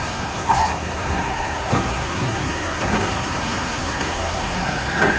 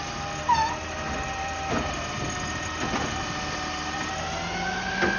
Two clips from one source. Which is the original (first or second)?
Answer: second